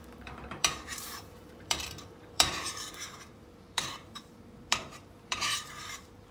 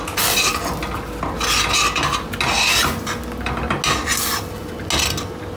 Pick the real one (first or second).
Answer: second